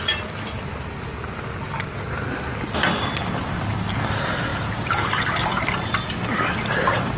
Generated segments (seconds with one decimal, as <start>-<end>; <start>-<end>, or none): 0.0-0.7; 3.4-7.2